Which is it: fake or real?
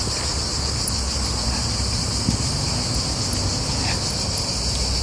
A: real